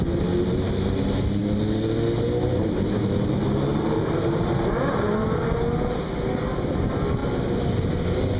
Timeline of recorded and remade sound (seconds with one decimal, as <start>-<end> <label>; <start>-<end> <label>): 0.0-3.7 recorded; 3.7-5.6 remade; 5.6-8.4 recorded

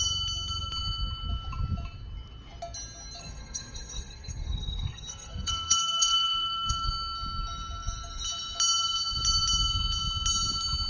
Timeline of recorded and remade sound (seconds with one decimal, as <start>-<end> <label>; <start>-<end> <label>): 0.0-3.2 recorded; 3.2-6.9 remade; 6.9-10.9 recorded

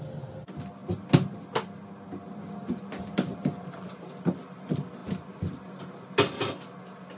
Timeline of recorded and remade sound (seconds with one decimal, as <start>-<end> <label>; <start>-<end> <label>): 0.0-3.3 recorded; 3.3-4.1 remade; 4.1-7.2 recorded

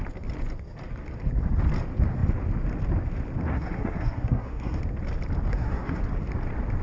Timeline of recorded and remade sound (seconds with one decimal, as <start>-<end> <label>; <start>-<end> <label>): 0.0-3.5 recorded; 3.5-4.8 remade; 4.8-5.5 recorded; 5.5-6.0 remade; 6.0-6.8 recorded

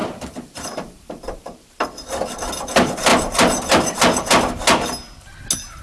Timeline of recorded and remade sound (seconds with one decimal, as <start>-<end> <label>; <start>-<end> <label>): 0.0-1.6 remade; 1.6-5.8 recorded